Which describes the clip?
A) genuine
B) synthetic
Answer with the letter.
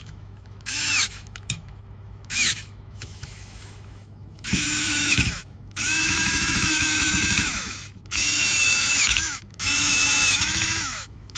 B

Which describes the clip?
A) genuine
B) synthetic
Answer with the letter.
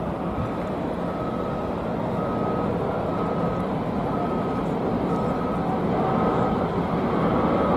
A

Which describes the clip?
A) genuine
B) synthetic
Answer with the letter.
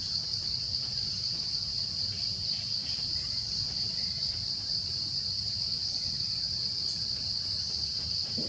A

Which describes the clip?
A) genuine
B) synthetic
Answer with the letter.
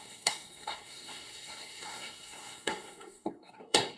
B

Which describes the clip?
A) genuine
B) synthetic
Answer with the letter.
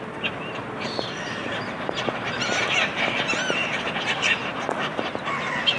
A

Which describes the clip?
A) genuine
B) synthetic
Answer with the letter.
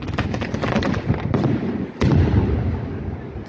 A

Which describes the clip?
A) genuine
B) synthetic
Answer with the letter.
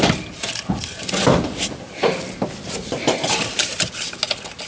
A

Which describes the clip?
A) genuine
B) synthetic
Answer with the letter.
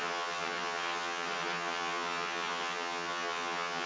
B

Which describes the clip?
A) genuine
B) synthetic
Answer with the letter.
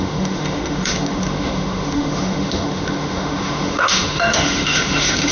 B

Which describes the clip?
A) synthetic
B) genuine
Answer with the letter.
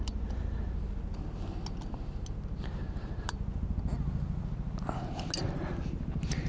B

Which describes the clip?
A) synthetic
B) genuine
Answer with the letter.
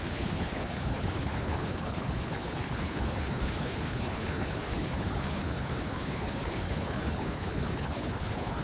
A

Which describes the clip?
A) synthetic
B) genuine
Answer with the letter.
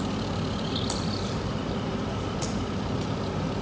B